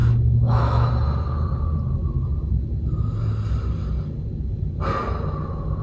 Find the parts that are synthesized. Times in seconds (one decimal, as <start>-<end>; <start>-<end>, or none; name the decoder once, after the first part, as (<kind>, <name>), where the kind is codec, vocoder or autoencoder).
0.0-0.9 (autoencoder, DAC-VAE)